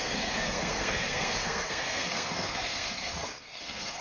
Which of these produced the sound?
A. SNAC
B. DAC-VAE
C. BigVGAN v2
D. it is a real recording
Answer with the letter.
A